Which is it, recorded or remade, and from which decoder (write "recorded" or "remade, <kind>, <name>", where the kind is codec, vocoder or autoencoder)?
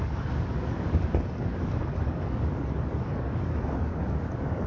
remade, codec, DAC